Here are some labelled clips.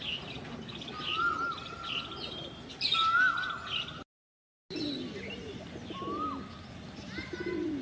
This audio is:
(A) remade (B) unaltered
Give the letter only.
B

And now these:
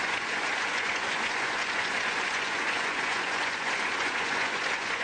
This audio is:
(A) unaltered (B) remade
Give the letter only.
B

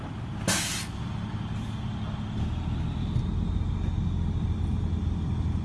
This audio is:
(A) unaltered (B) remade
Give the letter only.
A